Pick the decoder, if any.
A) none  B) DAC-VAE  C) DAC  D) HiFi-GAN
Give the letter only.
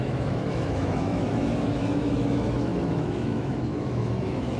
B